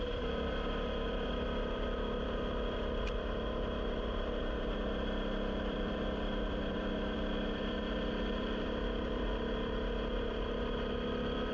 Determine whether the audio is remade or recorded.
remade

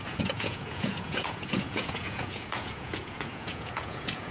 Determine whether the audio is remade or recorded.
remade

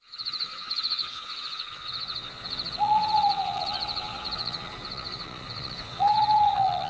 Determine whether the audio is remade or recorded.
remade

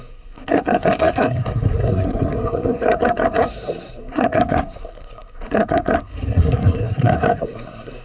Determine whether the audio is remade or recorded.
remade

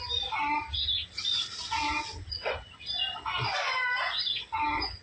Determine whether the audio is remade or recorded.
recorded